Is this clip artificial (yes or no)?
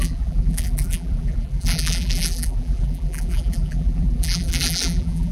yes